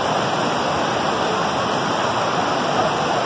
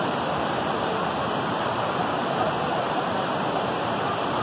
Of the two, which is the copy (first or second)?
second